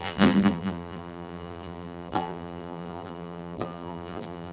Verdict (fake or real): fake